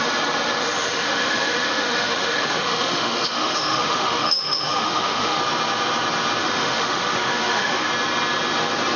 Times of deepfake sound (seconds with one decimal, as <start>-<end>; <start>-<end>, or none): 0.6-5.4; 6.4-7.9